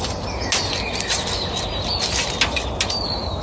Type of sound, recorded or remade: recorded